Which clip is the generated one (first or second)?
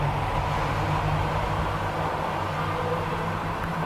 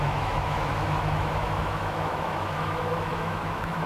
second